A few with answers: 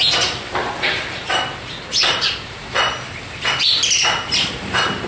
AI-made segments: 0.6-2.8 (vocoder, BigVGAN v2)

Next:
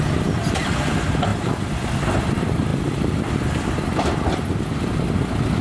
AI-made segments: 1.3-2.0 (vocoder, BigVGAN v2); 2.7-4.2

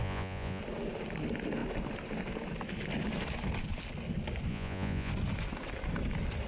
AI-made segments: 0.0-0.6 (vocoder, Vocos); 4.5-5.1

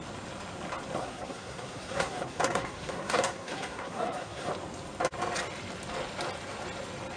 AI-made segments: 1.0-4.5 (codec, SNAC)

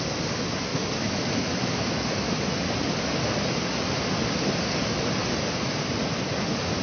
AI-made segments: 0.7-2.3 (autoencoder, DAC-VAE)

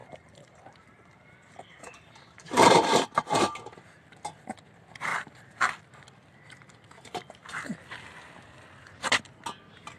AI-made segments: 0.0-3.6 (vocoder, BigVGAN v2); 5.1-5.8

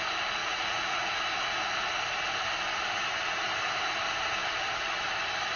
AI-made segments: 0.4-1.1 (vocoder, Vocos)